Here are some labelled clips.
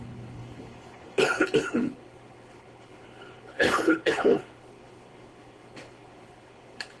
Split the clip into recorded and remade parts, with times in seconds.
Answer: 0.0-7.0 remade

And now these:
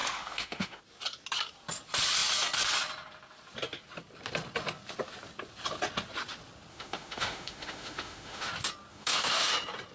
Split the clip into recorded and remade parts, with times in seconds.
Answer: 0.0-0.8 remade; 0.8-6.7 recorded; 6.7-8.5 remade; 8.5-8.9 recorded; 8.9-9.5 remade; 9.5-9.9 recorded

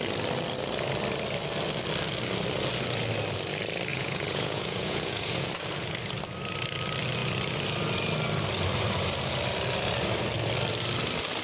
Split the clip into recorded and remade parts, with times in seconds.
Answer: 0.0-3.9 recorded; 3.9-5.5 remade; 5.5-11.4 recorded

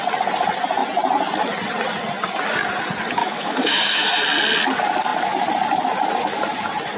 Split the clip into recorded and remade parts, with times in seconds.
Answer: 0.0-3.2 recorded; 3.2-4.2 remade; 4.2-7.0 recorded

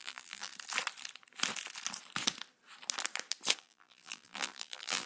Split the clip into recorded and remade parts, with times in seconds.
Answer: 0.0-0.5 remade; 0.5-3.6 recorded; 3.6-5.1 remade

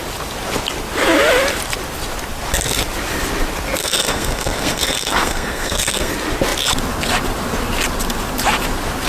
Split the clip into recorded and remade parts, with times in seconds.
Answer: 0.0-3.8 recorded; 3.8-6.1 remade; 6.1-9.1 recorded

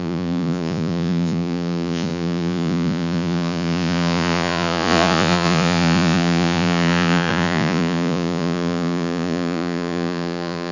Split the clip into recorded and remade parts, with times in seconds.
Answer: 0.0-10.7 remade

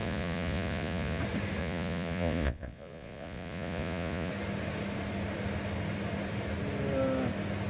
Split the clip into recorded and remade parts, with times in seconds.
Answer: 0.0-1.2 remade; 1.2-1.6 recorded; 1.6-4.3 remade; 4.3-7.7 recorded